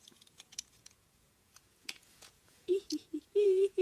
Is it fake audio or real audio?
fake